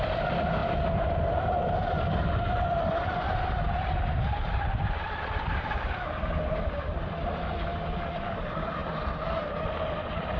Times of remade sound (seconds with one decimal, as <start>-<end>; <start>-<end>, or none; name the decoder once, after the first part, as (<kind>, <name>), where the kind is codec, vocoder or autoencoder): 0.0-8.8 (vocoder, BigVGAN v2); 9.6-10.4